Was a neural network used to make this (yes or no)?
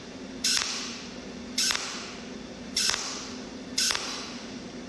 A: no